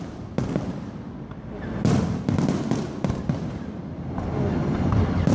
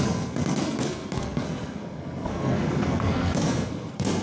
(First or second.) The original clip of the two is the first